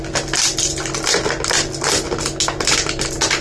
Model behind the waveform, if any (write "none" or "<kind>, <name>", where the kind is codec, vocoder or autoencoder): none